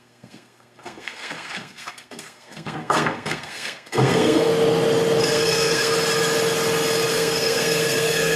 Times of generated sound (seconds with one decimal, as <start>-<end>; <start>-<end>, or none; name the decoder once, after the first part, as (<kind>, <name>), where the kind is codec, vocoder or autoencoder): 0.0-4.5 (codec, SNAC); 5.2-5.9; 7.1-8.4